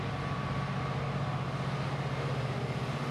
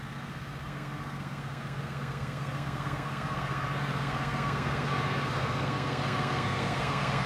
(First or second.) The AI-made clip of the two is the second